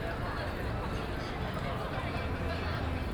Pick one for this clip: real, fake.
real